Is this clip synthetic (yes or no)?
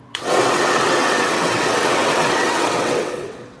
yes